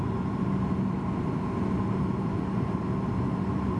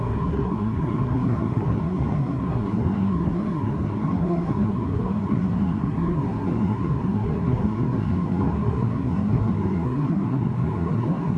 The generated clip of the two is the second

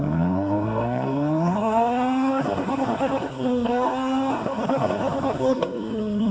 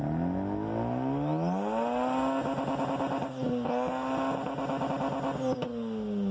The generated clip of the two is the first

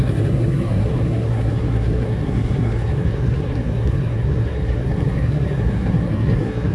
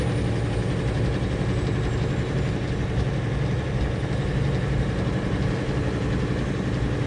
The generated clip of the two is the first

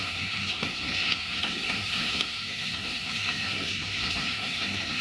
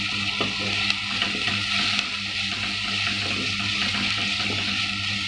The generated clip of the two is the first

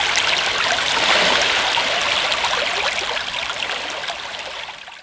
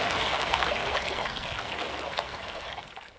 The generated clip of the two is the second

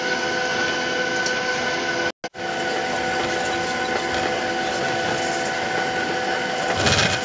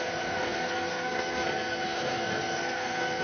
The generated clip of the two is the second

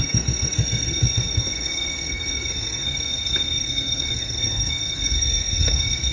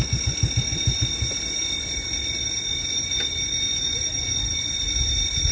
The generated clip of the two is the first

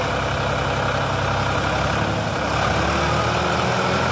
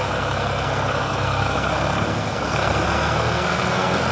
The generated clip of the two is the second